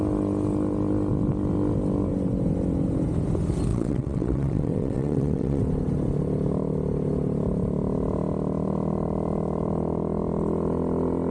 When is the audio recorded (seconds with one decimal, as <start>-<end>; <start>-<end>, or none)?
0.0-3.7; 5.6-11.3